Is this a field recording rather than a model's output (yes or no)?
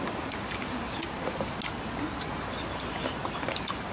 yes